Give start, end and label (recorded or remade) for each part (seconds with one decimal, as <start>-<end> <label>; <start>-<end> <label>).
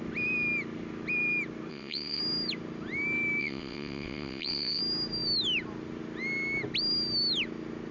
0.0-1.7 recorded; 1.7-2.2 remade; 2.2-3.4 recorded; 3.4-4.8 remade; 4.8-7.9 recorded